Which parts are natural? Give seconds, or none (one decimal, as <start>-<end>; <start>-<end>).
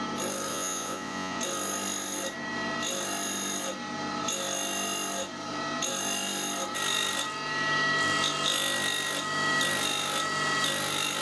0.0-0.5; 1.4-11.2